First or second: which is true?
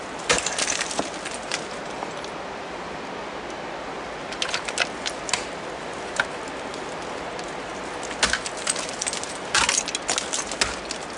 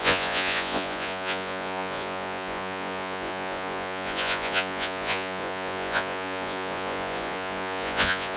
first